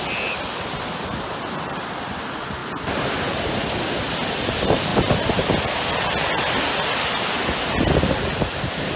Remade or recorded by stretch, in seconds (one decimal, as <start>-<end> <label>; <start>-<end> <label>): 0.0-9.0 recorded